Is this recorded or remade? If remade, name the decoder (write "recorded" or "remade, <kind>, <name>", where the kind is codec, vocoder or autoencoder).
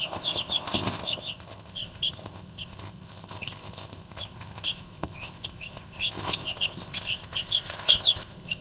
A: remade, codec, ZipCodec